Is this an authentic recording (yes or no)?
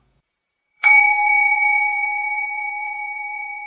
no